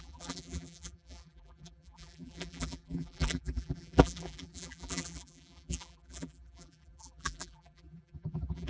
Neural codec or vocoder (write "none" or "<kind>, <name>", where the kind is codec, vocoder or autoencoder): vocoder, BigVGAN v2